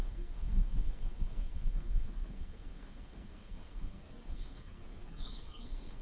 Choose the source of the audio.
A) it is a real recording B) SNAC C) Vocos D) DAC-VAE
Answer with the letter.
B